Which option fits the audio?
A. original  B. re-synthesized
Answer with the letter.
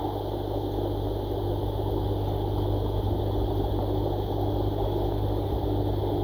A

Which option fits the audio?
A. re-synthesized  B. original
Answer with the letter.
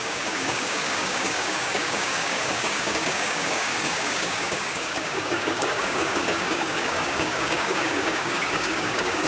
A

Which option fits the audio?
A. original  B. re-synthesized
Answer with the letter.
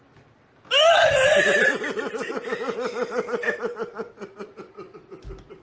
A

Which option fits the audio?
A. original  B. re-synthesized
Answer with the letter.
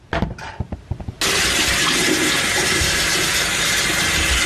A